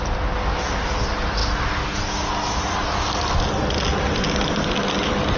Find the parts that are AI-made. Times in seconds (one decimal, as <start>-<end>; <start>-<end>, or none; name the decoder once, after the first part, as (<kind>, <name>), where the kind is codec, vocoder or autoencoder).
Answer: none